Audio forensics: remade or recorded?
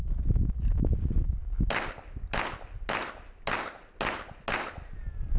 recorded